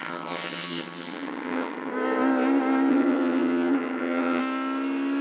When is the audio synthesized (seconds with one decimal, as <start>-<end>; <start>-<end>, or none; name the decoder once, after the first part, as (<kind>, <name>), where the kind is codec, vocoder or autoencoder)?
0.0-1.9 (vocoder, HiFi-GAN); 2.9-4.4